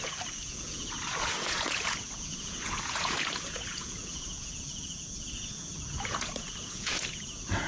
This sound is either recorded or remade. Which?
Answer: remade